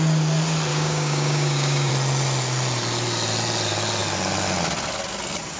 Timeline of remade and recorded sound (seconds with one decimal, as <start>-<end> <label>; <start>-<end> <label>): 0.0-0.7 recorded; 0.7-1.9 remade; 1.9-5.6 recorded